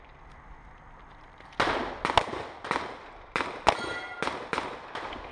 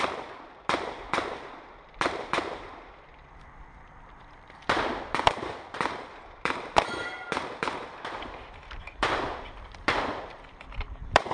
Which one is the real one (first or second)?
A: first